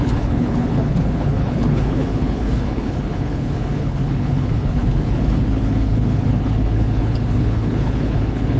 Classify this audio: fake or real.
fake